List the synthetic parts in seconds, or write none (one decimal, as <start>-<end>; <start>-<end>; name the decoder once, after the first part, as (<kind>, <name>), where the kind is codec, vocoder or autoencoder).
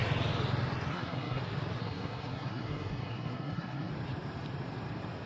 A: 0.9-1.4 (codec, SNAC); 1.8-3.9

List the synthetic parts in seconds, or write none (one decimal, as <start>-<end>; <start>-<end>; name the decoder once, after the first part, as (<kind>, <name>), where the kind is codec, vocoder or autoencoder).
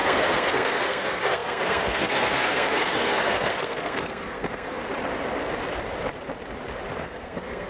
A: 0.0-4.8 (codec, SNAC); 7.0-7.7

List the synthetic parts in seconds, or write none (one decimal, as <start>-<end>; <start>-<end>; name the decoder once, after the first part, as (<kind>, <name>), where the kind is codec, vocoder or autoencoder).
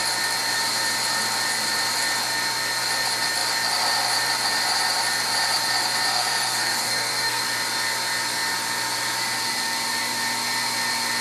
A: 6.1-7.4 (codec, SNAC)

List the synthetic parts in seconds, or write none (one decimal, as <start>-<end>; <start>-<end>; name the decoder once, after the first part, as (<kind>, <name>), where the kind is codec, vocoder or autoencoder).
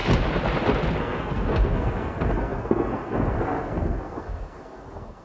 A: 1.0-5.2 (codec, SNAC)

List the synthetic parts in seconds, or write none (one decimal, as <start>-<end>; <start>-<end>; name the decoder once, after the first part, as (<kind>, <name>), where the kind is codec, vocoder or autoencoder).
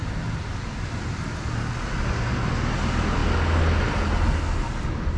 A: none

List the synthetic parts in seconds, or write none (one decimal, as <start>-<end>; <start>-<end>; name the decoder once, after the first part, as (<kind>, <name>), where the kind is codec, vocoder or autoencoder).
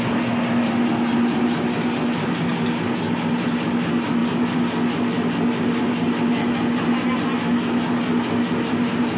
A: none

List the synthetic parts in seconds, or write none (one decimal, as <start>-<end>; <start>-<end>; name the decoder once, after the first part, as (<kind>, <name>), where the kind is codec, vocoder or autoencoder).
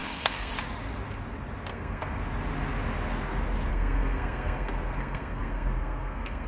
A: 0.0-0.5 (codec, SNAC); 1.7-2.2; 3.7-6.5